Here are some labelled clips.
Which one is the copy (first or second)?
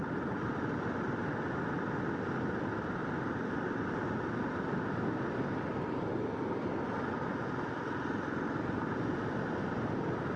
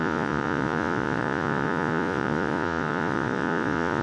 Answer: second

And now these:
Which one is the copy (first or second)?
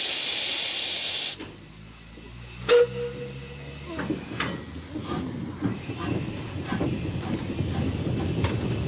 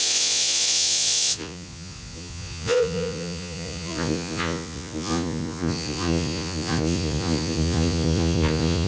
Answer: second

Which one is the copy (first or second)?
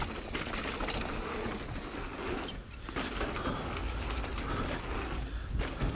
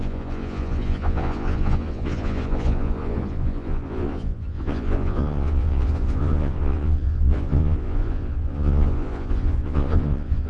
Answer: second